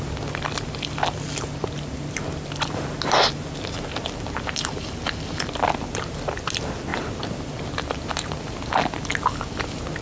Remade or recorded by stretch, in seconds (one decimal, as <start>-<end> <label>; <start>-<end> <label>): 0.0-10.0 recorded